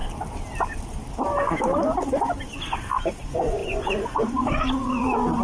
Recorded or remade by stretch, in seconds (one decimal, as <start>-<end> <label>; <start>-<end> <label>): 0.0-3.2 recorded; 3.2-5.4 remade